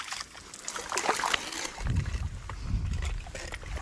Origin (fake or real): real